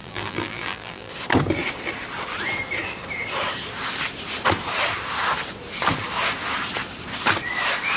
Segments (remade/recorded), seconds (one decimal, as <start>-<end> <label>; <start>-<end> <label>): 0.0-1.1 remade; 1.1-8.0 recorded